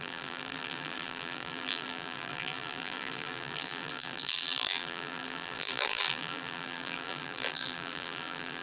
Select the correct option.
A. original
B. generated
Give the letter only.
B